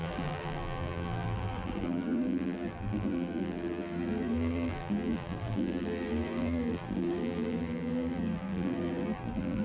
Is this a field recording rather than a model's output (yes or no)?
no